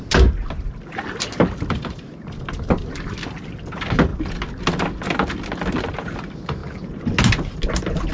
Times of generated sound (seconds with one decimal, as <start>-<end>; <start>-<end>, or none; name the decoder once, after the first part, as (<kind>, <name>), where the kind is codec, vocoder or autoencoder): none